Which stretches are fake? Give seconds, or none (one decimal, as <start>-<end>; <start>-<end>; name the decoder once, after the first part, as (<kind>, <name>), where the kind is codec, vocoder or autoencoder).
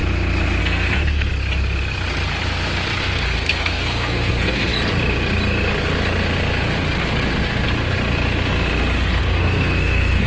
0.6-1.3 (codec, SNAC); 3.0-4.7; 9.2-10.3